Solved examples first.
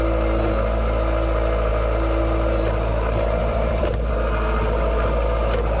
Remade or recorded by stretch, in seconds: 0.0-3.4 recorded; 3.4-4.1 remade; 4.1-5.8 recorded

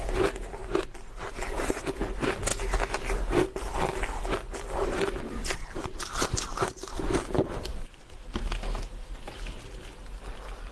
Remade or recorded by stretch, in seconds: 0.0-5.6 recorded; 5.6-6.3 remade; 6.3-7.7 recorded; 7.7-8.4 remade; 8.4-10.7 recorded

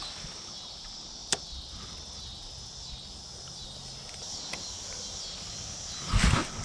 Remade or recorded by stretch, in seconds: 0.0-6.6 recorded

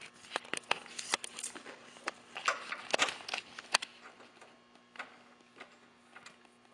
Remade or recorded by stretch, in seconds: 0.0-6.7 recorded

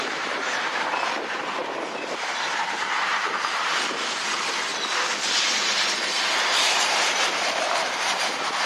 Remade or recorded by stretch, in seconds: 0.0-4.7 remade; 4.7-6.4 recorded; 6.4-8.7 remade

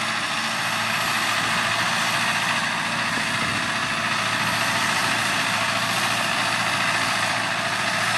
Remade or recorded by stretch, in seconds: 0.0-5.0 recorded; 5.0-8.2 remade

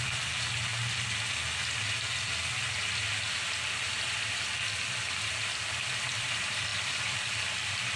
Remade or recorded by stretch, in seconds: 0.0-0.7 remade; 0.7-4.9 recorded; 4.9-8.0 remade